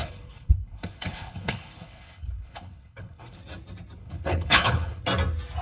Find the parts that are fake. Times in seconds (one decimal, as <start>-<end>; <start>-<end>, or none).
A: 0.0-3.4; 4.0-5.0